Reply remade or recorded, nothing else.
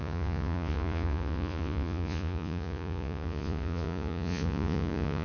remade